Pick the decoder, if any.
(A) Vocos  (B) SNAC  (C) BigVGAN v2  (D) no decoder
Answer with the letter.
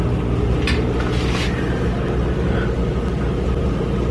D